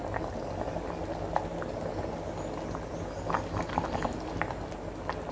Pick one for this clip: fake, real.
real